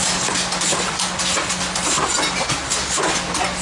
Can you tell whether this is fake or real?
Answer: real